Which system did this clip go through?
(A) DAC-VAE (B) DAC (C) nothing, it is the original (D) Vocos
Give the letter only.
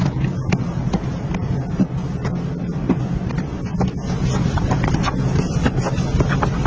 C